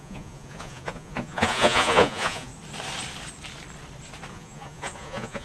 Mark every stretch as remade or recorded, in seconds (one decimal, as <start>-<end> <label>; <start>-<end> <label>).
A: 0.0-2.5 remade; 2.5-4.3 recorded; 4.3-5.4 remade